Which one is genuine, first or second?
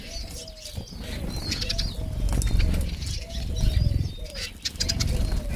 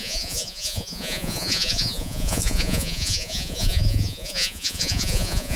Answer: first